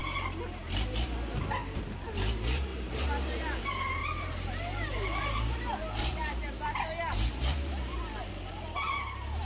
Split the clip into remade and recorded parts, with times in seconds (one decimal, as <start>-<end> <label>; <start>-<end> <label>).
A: 0.0-1.6 recorded; 1.6-2.1 remade; 2.1-2.7 recorded; 2.7-3.6 remade; 3.6-4.0 recorded; 4.0-8.3 remade; 8.3-9.4 recorded